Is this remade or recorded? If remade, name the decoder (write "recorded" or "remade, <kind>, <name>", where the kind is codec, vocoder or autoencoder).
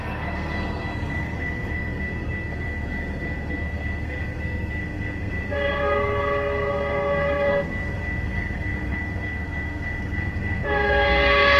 remade, codec, SNAC